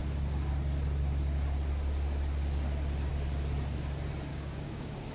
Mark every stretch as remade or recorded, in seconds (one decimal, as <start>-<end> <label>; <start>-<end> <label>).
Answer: 0.0-4.3 recorded; 4.3-5.1 remade